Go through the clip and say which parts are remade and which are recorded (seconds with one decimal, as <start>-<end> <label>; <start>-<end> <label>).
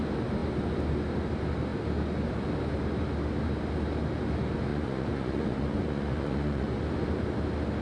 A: 0.0-4.7 recorded; 4.7-6.8 remade; 6.8-7.8 recorded